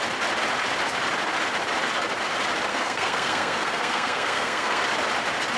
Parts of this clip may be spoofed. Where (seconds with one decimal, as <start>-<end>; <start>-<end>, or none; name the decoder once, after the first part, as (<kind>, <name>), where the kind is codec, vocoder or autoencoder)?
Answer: 2.7-4.8 (codec, SNAC)